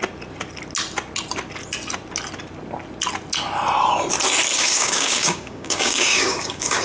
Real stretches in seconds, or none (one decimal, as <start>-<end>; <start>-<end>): 0.0-4.5